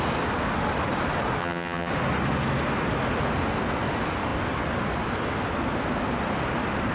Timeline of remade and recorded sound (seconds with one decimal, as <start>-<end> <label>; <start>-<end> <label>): 0.0-1.4 recorded; 1.4-1.9 remade; 1.9-6.9 recorded